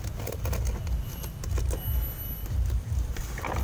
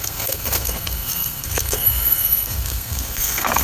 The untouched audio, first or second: first